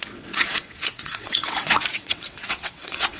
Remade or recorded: remade